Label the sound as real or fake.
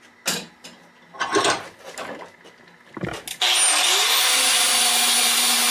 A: real